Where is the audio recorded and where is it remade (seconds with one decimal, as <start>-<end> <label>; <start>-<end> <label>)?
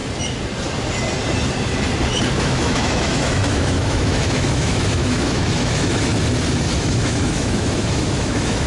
0.0-2.3 recorded; 2.3-6.1 remade; 6.1-6.8 recorded; 6.8-8.7 remade